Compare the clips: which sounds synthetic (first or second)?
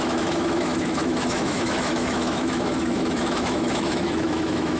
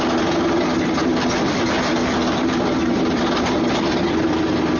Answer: first